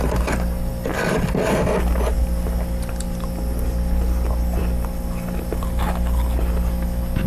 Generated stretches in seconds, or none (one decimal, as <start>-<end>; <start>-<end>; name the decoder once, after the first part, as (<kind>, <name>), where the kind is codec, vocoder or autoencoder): none